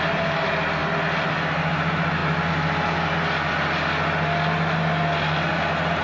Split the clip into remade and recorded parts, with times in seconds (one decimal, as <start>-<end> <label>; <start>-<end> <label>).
0.0-6.0 recorded